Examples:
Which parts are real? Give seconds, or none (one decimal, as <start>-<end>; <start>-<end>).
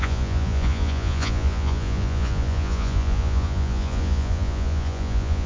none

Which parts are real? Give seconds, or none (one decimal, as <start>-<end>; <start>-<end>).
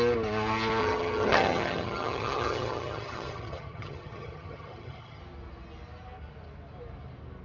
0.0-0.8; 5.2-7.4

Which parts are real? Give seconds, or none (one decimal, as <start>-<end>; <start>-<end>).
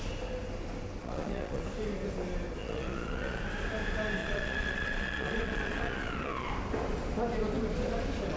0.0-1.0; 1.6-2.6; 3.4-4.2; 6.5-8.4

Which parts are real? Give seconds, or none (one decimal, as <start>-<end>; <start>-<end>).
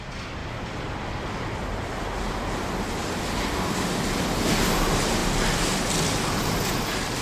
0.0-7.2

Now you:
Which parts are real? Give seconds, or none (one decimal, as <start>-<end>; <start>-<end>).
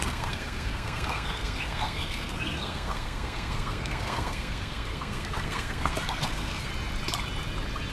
6.7-7.9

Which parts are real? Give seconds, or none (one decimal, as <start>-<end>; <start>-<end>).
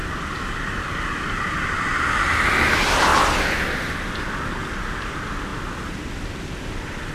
0.0-7.1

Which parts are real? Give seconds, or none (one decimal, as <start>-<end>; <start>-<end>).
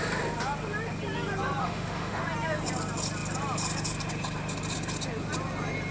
0.0-1.6; 2.2-5.9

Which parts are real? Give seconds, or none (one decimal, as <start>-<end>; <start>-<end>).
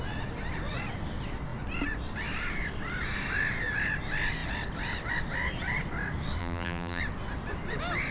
0.0-6.4; 7.0-8.1